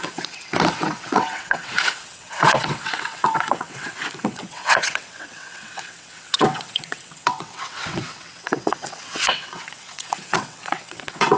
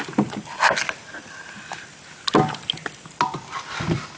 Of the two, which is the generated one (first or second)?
first